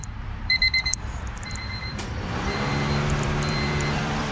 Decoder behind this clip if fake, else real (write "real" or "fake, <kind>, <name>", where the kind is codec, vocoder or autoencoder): fake, vocoder, BigVGAN v2